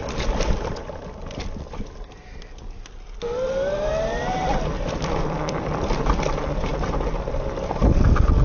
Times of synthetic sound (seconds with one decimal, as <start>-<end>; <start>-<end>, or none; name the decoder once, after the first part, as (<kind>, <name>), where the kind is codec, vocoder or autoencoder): none